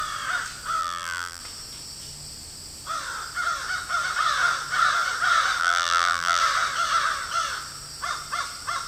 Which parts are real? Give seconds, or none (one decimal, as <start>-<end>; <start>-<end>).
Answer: 0.0-0.8; 1.4-5.6; 6.4-8.9